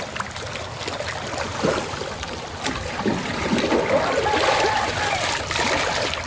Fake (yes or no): no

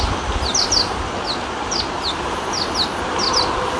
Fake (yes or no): no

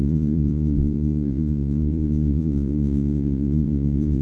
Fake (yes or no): yes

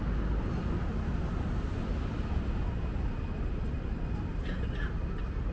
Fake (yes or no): no